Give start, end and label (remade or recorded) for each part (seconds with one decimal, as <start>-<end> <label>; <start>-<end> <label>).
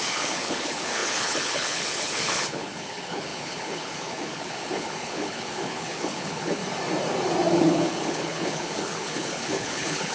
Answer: 0.0-6.6 remade; 6.6-7.5 recorded; 7.5-10.1 remade